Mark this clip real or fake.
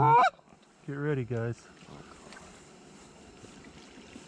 real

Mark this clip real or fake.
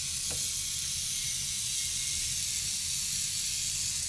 real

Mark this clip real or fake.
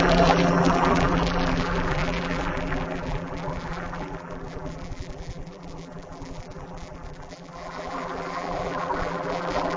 fake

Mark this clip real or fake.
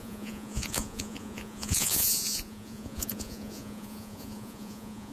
fake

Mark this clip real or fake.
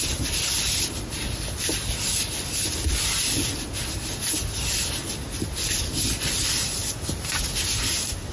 real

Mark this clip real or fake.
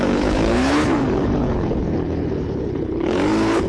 fake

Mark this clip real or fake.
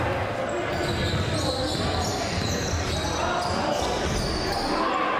real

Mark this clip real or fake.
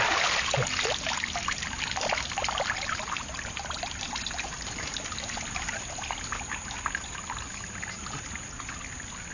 real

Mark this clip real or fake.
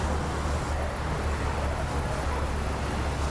real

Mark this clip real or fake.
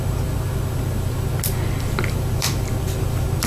fake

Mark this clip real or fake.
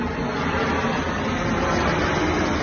real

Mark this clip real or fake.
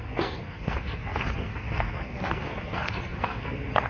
fake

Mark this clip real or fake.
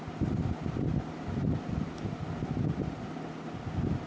real